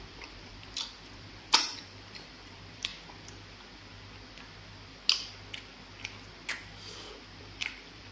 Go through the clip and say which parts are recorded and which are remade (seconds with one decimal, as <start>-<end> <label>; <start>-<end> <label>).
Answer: 0.0-2.9 remade; 2.9-7.1 recorded; 7.1-8.1 remade